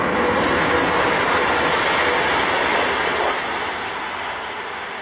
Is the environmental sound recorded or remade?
recorded